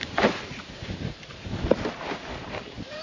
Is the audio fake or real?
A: fake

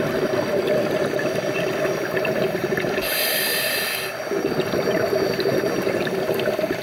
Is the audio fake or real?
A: real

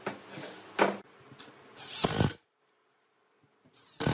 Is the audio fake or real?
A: real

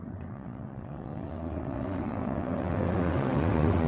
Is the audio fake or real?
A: fake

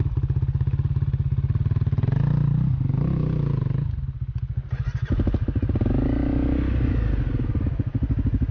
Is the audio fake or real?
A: real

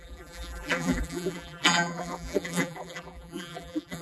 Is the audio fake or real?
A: fake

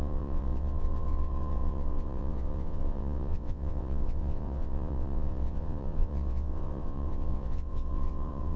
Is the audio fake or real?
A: fake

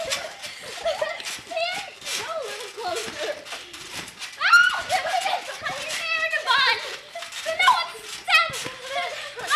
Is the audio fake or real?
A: real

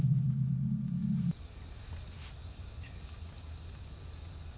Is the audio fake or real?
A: real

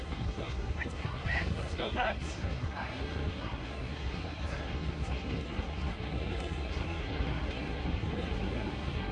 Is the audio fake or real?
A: fake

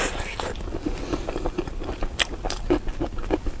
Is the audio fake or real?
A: real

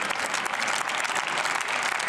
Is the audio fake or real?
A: real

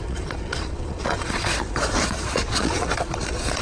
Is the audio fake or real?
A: fake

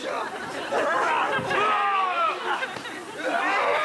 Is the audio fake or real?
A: real